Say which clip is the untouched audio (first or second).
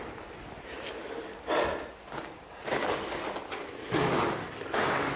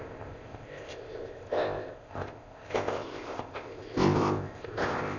first